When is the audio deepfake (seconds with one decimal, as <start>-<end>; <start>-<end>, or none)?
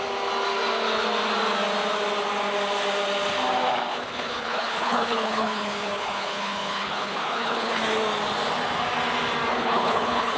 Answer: 3.9-7.8; 9.5-10.4